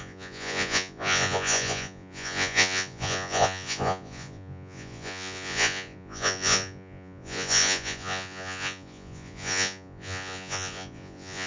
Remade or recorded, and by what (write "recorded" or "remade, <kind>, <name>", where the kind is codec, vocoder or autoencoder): remade, vocoder, Vocos